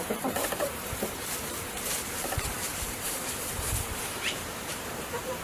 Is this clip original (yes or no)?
no